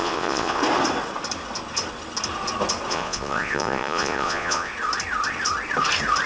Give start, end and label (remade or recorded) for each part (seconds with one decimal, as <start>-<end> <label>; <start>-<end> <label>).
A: 0.0-0.6 remade; 0.6-2.9 recorded; 2.9-4.7 remade; 4.7-6.3 recorded